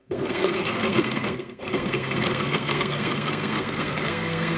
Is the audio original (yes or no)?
no